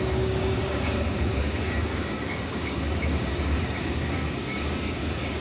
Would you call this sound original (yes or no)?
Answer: no